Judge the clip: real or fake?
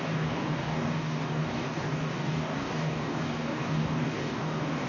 fake